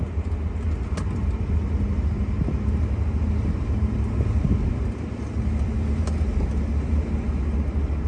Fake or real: real